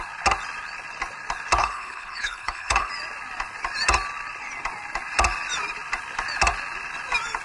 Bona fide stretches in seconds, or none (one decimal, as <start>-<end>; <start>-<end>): 0.0-1.6; 2.9-7.4